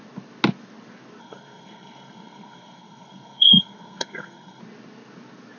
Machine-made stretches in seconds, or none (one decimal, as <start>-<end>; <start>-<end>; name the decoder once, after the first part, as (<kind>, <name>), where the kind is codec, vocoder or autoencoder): 1.2-4.6 (codec, SNAC)